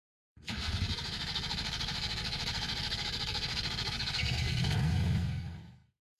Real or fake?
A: fake